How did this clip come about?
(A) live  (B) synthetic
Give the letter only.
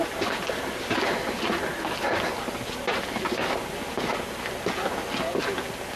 A